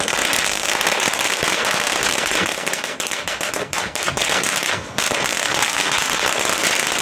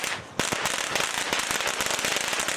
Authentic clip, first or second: second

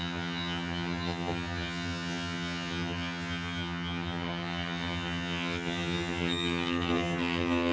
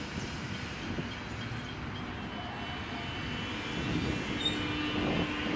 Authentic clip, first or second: second